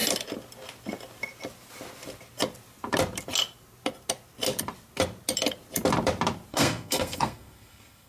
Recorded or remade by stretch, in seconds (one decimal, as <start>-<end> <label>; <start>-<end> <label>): 0.0-6.5 recorded; 6.5-8.1 remade